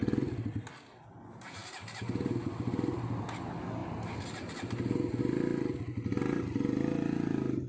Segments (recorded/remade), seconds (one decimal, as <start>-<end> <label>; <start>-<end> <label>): 0.0-7.7 recorded